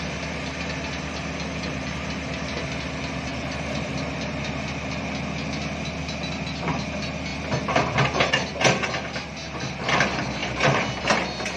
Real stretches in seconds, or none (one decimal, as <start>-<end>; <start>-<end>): 0.0-3.3; 3.9-11.6